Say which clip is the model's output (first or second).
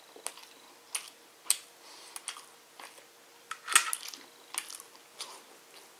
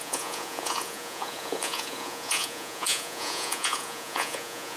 second